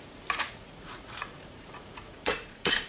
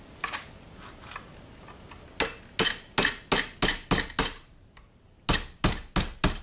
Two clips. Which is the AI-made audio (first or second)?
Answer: first